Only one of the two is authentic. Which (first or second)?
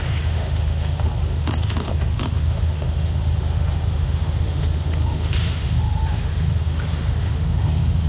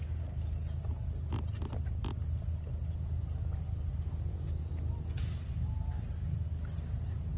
second